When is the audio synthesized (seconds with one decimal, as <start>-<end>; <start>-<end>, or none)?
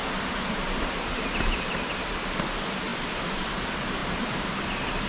0.0-1.4; 2.9-3.5; 4.0-5.1